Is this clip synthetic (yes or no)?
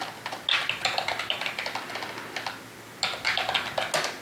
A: no